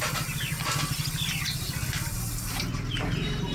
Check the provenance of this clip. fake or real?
real